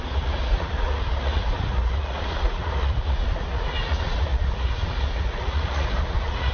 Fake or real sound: fake